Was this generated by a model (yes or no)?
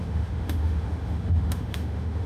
yes